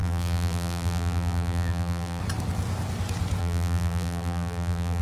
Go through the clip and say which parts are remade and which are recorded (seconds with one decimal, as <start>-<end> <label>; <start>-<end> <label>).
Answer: 0.0-2.2 remade; 2.2-3.4 recorded; 3.4-5.0 remade